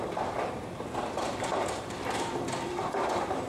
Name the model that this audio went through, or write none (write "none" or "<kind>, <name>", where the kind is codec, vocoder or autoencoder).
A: vocoder, BigVGAN v2